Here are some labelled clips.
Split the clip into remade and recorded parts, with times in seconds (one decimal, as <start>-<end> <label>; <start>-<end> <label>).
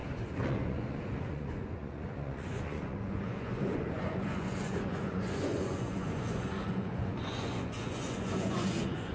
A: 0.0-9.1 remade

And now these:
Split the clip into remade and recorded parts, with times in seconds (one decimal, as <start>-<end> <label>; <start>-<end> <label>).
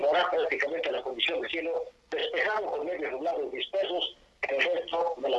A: 0.0-5.4 recorded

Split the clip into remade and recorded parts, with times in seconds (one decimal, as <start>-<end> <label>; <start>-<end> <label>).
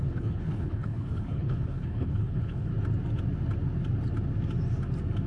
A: 0.0-2.7 remade; 2.7-5.3 recorded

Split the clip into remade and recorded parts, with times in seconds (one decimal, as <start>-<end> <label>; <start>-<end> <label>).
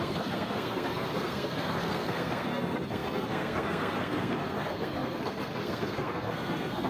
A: 0.0-6.9 remade